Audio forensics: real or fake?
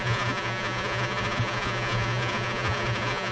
fake